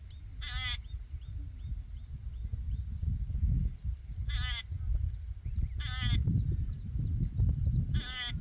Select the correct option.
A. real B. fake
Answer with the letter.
A